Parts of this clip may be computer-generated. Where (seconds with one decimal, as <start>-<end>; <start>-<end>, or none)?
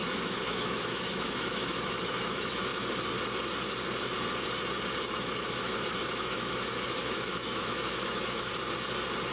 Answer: 0.0-2.7; 5.1-8.5